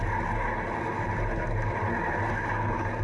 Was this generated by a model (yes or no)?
no